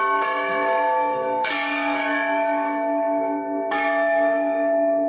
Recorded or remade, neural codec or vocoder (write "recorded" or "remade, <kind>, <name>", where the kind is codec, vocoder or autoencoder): remade, codec, DAC